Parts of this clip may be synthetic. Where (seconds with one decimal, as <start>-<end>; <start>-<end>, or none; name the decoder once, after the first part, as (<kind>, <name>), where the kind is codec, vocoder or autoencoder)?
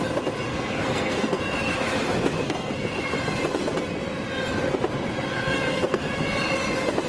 0.5-1.4 (codec, SNAC); 2.4-2.9; 5.3-6.2